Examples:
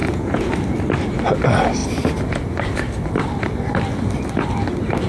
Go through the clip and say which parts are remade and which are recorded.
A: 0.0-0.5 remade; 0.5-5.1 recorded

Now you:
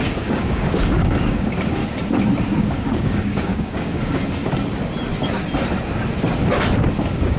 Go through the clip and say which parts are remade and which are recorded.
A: 0.0-1.8 remade; 1.8-2.6 recorded; 2.6-4.4 remade; 4.4-6.9 recorded; 6.9-7.4 remade

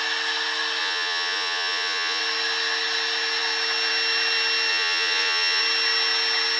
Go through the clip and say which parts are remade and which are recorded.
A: 0.0-0.8 recorded; 0.8-2.2 remade; 2.2-4.7 recorded; 4.7-5.6 remade; 5.6-6.6 recorded

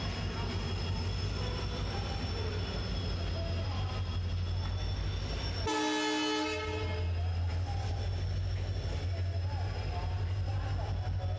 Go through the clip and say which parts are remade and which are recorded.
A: 0.0-11.4 recorded

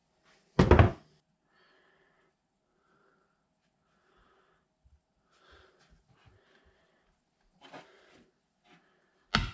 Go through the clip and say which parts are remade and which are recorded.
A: 0.0-9.5 recorded